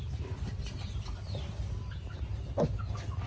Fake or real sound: real